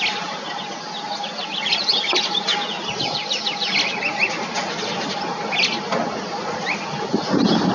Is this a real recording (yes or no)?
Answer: yes